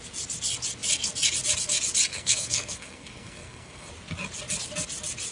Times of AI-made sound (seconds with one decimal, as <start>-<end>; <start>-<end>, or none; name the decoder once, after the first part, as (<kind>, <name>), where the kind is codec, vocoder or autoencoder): 2.1-3.9 (codec, SNAC)